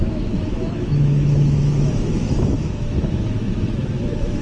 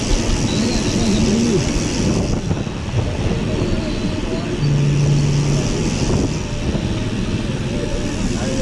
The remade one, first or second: first